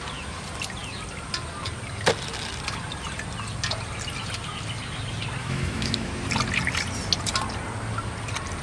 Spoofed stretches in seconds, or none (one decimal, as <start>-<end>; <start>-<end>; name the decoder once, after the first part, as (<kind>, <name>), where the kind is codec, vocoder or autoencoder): 5.4-6.1 (autoencoder, DAC-VAE)

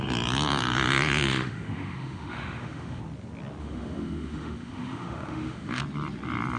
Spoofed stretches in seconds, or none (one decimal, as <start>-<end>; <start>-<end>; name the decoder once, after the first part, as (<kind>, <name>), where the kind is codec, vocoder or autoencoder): 1.3-3.0 (autoencoder, DAC-VAE); 3.6-5.8

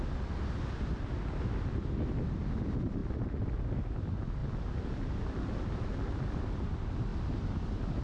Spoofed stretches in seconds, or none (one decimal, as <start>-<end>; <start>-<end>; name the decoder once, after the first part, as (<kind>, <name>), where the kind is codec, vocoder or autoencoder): none

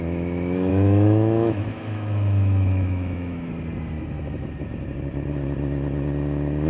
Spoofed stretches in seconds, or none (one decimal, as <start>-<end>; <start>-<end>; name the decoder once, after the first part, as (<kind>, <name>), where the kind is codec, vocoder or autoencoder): 0.7-3.5 (autoencoder, DAC-VAE)

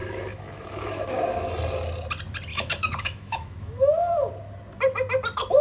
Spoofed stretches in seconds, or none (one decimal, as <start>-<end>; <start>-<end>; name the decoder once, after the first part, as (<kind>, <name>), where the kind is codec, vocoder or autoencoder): 0.0-1.5 (autoencoder, DAC-VAE); 2.5-4.3

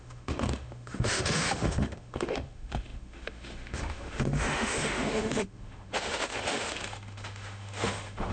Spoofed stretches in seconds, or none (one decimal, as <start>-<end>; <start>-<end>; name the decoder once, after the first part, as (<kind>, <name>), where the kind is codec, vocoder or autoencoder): 0.0-8.3 (autoencoder, DAC-VAE)

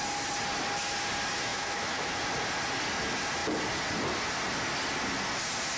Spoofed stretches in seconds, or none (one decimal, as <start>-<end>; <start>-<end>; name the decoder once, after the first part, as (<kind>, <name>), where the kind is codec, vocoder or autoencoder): 1.5-2.2 (autoencoder, DAC-VAE)